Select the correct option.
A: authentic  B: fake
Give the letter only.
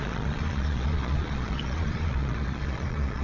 B